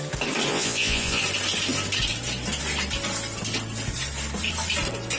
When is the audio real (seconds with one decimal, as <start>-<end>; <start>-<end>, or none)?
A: 0.0-0.5; 1.2-5.2